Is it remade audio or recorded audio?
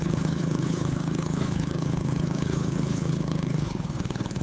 remade